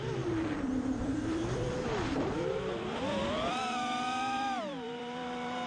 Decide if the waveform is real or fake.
fake